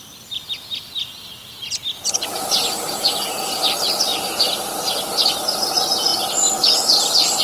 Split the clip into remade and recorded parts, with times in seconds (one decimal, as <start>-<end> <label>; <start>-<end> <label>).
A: 0.0-4.1 recorded; 4.1-4.8 remade; 4.8-6.1 recorded; 6.1-7.4 remade